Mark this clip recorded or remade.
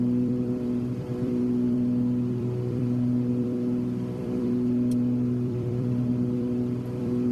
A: remade